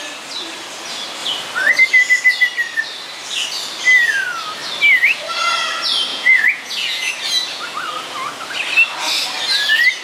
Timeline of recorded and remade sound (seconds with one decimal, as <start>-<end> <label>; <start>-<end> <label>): 0.0-6.1 recorded; 6.1-7.1 remade; 7.1-10.0 recorded